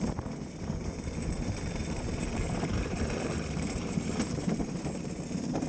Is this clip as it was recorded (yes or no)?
no